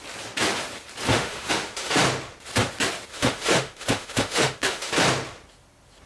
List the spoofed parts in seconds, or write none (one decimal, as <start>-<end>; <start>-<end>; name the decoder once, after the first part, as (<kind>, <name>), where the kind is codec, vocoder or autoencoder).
1.1-2.0 (autoencoder, DAC-VAE); 3.1-4.9